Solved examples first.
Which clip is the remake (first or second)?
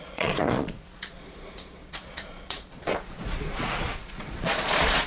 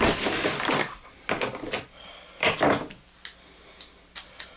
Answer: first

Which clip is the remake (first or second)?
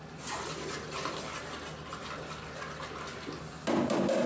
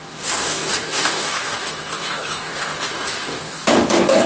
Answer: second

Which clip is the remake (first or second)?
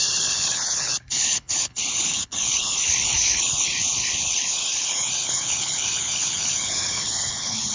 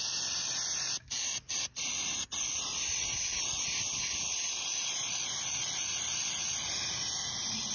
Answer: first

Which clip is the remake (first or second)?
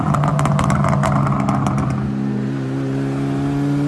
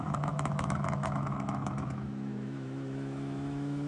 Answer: second